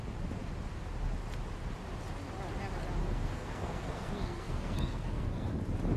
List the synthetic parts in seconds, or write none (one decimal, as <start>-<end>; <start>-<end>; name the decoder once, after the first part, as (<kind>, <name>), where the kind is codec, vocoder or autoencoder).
3.0-5.5 (codec, SNAC)